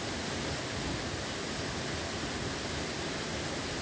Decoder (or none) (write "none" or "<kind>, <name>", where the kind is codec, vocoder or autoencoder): none